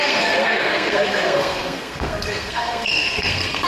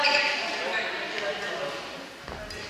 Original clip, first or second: second